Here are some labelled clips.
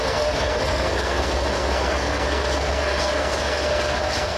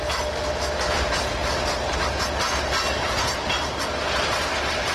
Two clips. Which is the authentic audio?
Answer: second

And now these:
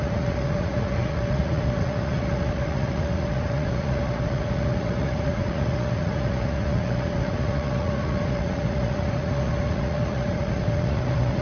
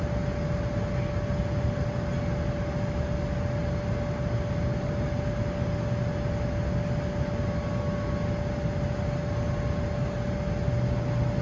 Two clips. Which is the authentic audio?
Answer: second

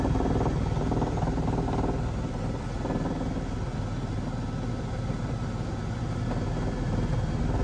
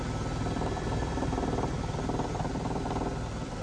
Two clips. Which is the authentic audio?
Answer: first